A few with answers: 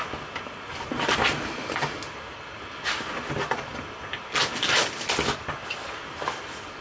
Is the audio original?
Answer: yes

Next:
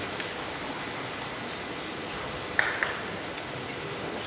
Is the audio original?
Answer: yes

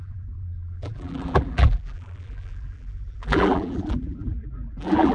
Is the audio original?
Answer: no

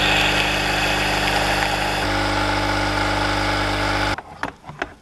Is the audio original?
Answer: yes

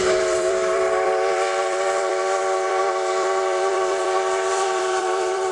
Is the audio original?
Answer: no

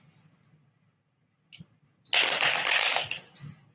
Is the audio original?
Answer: yes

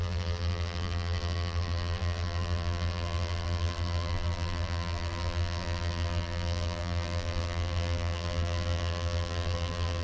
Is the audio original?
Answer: no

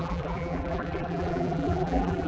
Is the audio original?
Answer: no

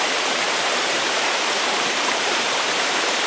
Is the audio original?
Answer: no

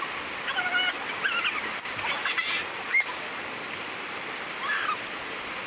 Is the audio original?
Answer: yes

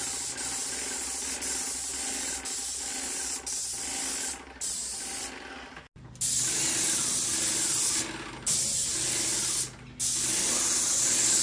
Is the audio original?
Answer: yes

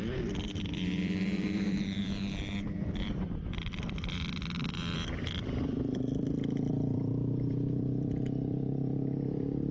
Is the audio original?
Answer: no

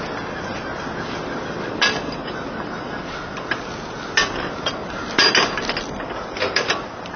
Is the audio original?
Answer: yes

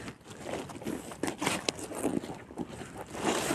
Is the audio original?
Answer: yes